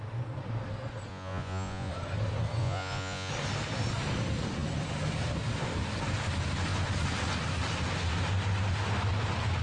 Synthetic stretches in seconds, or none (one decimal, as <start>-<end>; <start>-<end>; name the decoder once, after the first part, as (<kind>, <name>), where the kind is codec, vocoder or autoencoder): 1.1-1.9 (vocoder, Vocos); 2.6-3.3